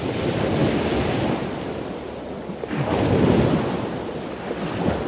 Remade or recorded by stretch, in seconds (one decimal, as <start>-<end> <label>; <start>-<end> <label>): 0.0-5.1 recorded